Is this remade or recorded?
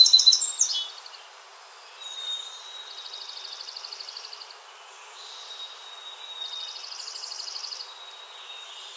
recorded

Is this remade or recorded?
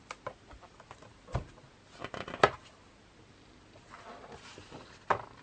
recorded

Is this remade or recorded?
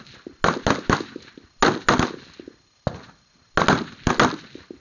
recorded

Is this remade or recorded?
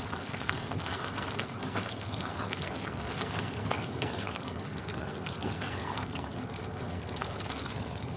remade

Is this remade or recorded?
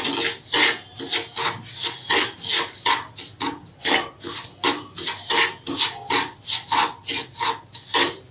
recorded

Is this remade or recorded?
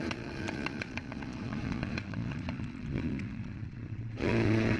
remade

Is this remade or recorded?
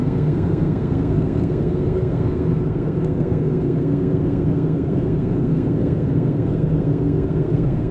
remade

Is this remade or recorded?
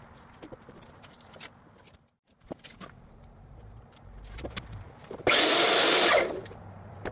remade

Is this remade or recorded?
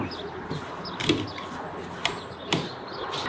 recorded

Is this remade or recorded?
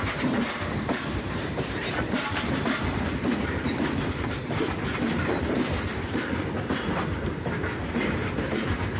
remade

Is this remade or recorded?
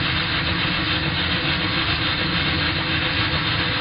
recorded